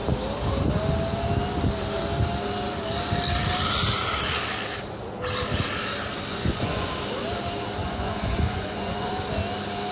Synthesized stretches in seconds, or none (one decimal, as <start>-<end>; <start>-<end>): 6.3-6.9; 7.8-9.1